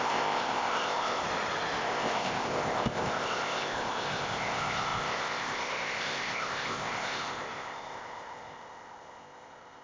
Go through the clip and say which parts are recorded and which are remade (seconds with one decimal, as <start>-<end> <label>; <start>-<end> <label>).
0.0-1.2 remade; 1.2-1.8 recorded; 1.8-9.8 remade